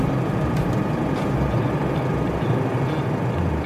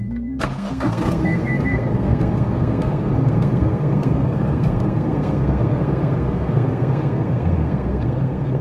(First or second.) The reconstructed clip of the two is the second